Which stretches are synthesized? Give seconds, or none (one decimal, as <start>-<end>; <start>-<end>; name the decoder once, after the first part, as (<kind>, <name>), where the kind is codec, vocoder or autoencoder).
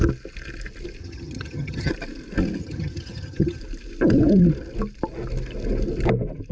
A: 1.0-1.9 (vocoder, HiFi-GAN); 2.6-3.6